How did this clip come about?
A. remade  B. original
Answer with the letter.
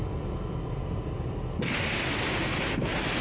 B